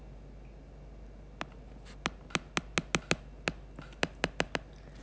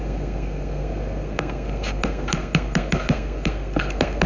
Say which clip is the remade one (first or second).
second